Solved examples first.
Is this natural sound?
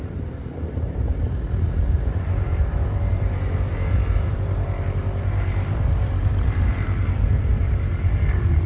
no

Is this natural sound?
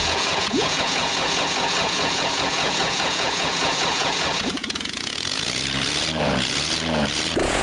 no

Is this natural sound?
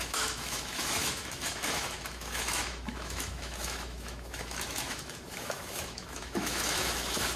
no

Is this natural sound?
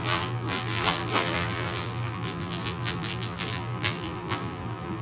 no